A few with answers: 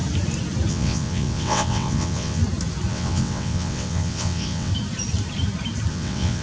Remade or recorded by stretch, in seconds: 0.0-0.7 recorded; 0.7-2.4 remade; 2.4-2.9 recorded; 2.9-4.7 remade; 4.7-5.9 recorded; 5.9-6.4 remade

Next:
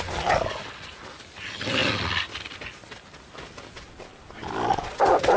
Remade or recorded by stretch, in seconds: 0.0-5.4 recorded

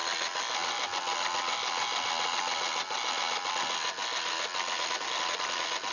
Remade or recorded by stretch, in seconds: 0.0-5.9 recorded

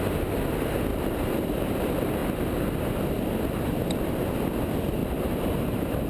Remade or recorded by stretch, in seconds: 0.0-0.9 recorded; 0.9-1.6 remade; 1.6-5.0 recorded; 5.0-6.1 remade

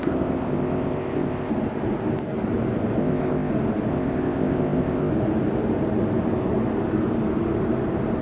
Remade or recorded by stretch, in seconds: 0.0-1.5 remade; 1.5-3.0 recorded; 3.0-3.5 remade; 3.5-3.9 recorded; 3.9-5.1 remade; 5.1-8.2 recorded

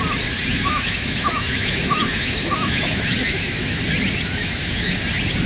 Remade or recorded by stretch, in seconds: 0.0-0.5 recorded; 0.5-3.8 remade; 3.8-4.4 recorded; 4.4-5.0 remade; 5.0-5.5 recorded

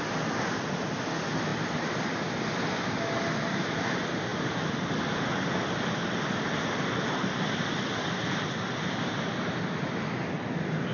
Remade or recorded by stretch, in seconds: 0.0-4.3 recorded; 4.3-8.7 remade; 8.7-10.9 recorded

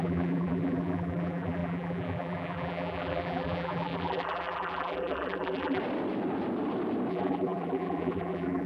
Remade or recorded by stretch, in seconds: 0.0-5.8 remade; 5.8-7.1 recorded; 7.1-8.7 remade